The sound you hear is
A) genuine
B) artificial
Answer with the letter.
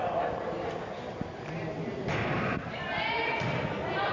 A